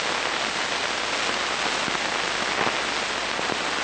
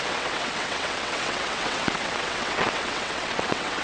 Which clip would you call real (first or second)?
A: first